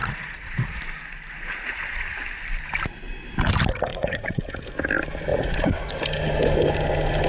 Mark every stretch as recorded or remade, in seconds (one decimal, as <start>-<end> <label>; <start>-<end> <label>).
0.0-0.8 remade; 0.8-3.9 recorded; 3.9-4.4 remade; 4.4-5.3 recorded; 5.3-5.9 remade; 5.9-7.3 recorded